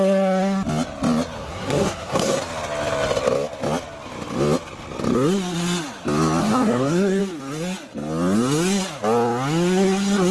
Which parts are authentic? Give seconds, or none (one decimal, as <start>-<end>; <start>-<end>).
0.0-1.4; 2.4-6.4; 7.2-10.3